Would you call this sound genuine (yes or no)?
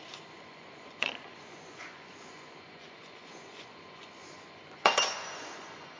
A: no